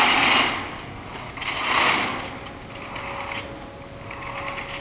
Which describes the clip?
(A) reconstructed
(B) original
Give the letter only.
B